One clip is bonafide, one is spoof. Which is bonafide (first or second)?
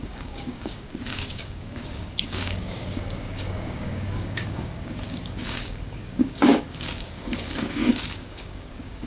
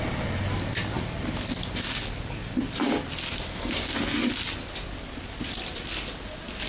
second